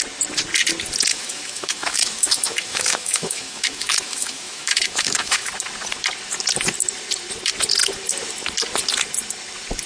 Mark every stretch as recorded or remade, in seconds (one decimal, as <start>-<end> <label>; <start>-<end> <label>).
0.0-1.1 recorded; 1.1-5.5 remade; 5.5-9.9 recorded

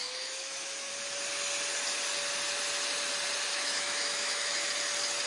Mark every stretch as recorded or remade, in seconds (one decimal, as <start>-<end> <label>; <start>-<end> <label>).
0.0-0.9 remade; 0.9-3.5 recorded; 3.5-4.7 remade; 4.7-5.3 recorded

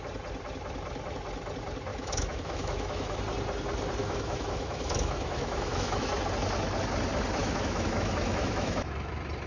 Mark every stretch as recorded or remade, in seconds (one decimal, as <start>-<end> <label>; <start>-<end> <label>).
0.0-1.9 recorded; 1.9-3.2 remade; 3.2-4.0 recorded; 4.0-6.1 remade; 6.1-7.4 recorded; 7.4-9.1 remade; 9.1-9.5 recorded

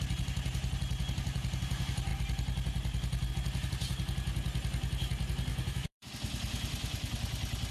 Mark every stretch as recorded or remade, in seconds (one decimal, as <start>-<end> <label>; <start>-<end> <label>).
0.0-5.5 recorded; 5.5-6.1 remade; 6.1-7.7 recorded

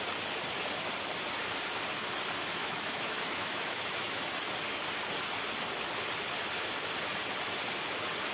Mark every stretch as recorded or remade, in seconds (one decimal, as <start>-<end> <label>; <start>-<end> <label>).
0.0-2.6 recorded; 2.6-4.2 remade; 4.2-8.3 recorded

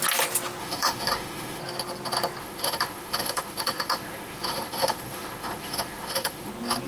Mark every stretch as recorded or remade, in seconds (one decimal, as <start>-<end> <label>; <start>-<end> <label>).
0.0-0.6 recorded; 0.6-1.6 remade; 1.6-2.4 recorded; 2.4-6.5 remade; 6.5-6.9 recorded

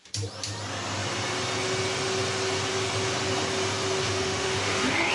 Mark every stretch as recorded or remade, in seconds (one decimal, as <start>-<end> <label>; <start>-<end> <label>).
0.0-4.0 recorded; 4.0-5.1 remade